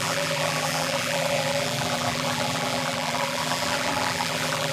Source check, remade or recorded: remade